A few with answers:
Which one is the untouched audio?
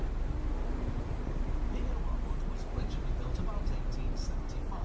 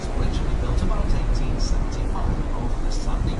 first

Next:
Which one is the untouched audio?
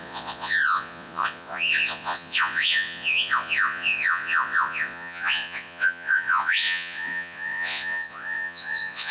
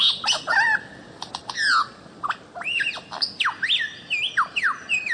second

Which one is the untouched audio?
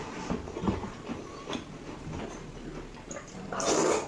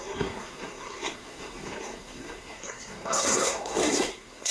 first